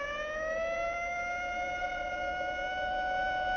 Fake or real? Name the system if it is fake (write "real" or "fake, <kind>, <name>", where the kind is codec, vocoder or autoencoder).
real